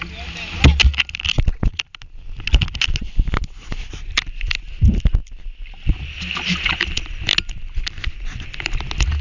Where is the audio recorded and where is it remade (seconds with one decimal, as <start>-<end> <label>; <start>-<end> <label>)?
0.0-9.2 recorded